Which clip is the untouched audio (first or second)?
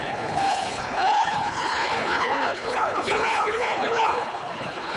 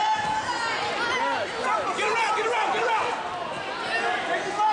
second